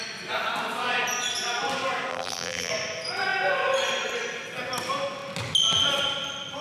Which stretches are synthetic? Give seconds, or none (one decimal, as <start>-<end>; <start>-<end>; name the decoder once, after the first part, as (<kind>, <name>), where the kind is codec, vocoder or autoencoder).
2.1-2.7 (vocoder, BigVGAN v2)